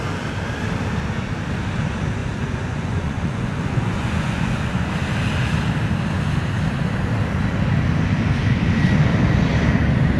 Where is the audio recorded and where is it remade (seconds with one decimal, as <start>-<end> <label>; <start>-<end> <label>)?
0.0-2.2 recorded; 2.2-4.9 remade; 4.9-10.2 recorded